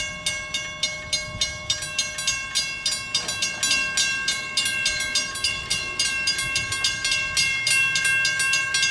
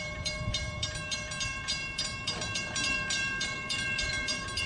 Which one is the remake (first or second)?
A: second